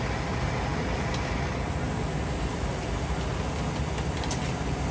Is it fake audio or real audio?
real